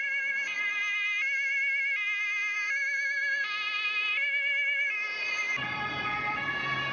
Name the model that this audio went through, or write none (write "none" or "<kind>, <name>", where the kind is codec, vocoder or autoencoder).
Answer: vocoder, BigVGAN v2